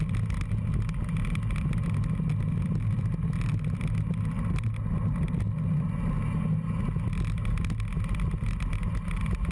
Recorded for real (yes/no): yes